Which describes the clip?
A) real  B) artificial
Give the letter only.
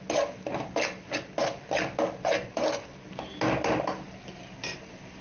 A